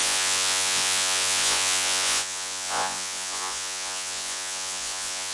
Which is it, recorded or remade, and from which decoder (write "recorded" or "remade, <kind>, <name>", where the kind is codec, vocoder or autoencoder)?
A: remade, vocoder, Vocos